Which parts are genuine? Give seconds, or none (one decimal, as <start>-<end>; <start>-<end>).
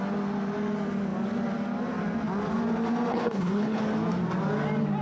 0.0-3.1; 3.8-5.0